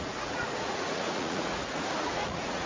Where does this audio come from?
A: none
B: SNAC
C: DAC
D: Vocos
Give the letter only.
D